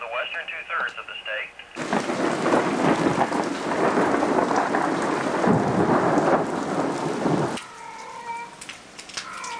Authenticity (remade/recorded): recorded